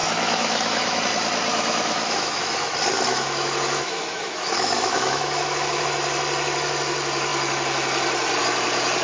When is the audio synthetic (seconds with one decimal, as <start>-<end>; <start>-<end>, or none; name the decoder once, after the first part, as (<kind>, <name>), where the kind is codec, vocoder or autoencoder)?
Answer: 0.0-1.0 (autoencoder, DAC-VAE); 1.5-2.7; 3.1-5.8